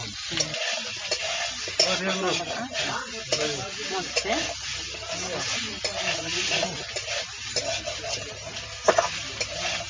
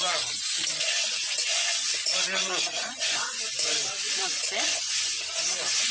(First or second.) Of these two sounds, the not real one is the second